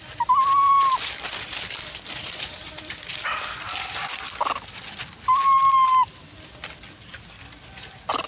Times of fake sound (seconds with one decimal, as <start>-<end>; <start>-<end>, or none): 0.6-3.3